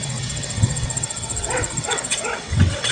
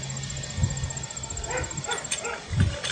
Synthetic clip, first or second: first